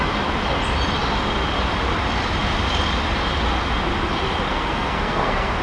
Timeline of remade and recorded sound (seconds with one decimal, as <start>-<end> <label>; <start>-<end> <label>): 0.0-4.5 recorded; 4.5-5.6 remade

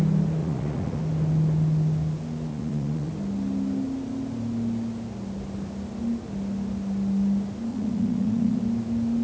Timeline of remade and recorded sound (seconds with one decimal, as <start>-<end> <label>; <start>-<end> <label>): 0.0-0.4 recorded; 0.4-1.0 remade; 1.0-2.5 recorded; 2.5-3.1 remade; 3.1-7.7 recorded; 7.7-8.6 remade; 8.6-9.2 recorded